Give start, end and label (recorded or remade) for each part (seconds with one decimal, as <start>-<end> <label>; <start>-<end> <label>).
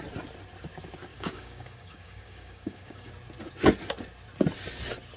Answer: 0.0-1.1 recorded; 1.1-3.1 remade; 3.1-5.2 recorded